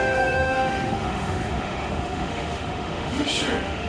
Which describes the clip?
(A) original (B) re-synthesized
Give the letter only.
B